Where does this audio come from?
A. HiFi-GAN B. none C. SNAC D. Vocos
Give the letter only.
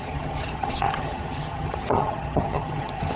A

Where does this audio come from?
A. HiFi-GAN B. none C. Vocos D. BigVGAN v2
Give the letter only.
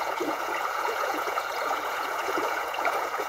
C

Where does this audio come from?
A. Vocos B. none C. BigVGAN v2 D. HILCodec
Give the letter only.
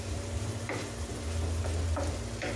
B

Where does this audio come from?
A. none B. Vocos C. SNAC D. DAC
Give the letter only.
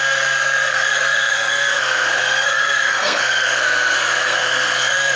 C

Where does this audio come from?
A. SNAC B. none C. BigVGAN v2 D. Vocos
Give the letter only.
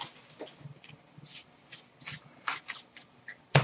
B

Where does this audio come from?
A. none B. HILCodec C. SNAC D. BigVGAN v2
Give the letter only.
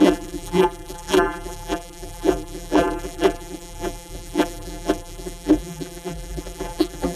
D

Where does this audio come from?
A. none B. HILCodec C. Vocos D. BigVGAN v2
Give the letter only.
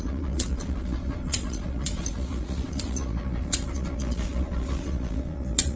C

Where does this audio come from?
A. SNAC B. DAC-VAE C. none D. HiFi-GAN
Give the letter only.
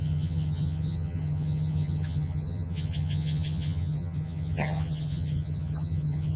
D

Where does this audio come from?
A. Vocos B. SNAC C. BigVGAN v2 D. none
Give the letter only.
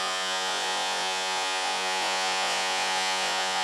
A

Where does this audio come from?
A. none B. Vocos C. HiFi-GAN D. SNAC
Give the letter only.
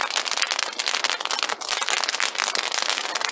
A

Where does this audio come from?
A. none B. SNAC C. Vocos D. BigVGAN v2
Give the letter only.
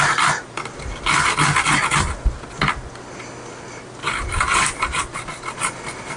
A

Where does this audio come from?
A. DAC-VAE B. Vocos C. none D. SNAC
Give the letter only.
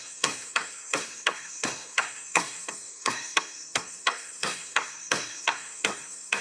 D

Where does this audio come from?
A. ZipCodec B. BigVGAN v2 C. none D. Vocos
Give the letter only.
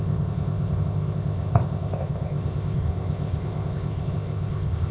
A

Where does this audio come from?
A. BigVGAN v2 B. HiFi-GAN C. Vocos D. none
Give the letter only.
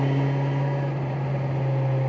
D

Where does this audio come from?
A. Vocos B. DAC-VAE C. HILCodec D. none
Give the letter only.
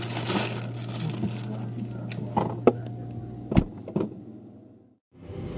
D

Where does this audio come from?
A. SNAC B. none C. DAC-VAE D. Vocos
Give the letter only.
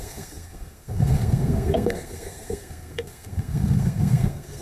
A